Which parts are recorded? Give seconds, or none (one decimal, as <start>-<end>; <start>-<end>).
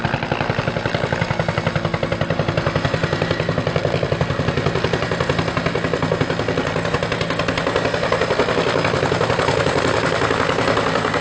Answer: 0.0-11.2